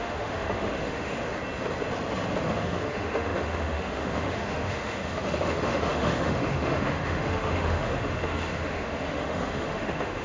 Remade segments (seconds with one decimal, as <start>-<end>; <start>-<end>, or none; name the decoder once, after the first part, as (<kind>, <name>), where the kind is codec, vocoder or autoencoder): 0.0-1.3 (autoencoder, DAC-VAE); 2.4-10.2